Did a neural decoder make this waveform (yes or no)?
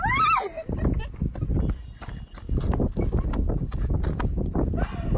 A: no